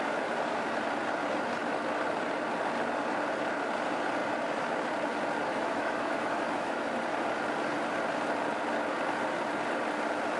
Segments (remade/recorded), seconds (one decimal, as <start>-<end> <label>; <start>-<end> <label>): 0.0-5.5 recorded; 5.5-7.0 remade; 7.0-10.4 recorded